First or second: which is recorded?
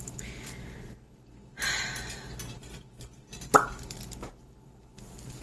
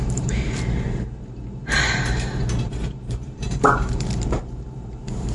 first